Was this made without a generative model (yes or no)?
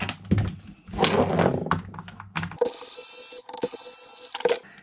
yes